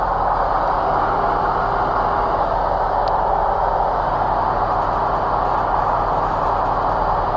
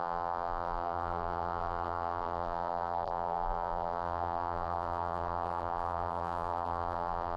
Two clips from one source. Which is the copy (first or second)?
second